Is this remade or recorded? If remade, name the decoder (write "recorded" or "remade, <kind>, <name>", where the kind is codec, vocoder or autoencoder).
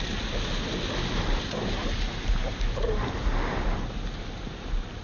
recorded